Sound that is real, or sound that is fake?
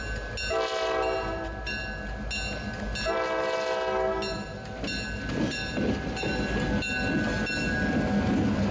real